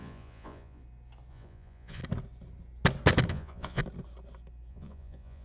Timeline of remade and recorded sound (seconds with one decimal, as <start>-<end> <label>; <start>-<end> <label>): 0.0-0.8 remade; 0.8-1.3 recorded; 1.3-2.0 remade; 2.0-3.3 recorded; 3.3-3.8 remade; 3.8-4.7 recorded; 4.7-5.4 remade